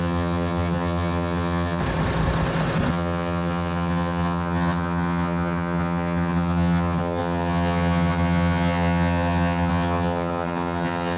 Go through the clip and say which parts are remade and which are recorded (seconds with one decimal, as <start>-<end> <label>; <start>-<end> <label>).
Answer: 0.0-1.8 remade; 1.8-2.9 recorded; 2.9-11.2 remade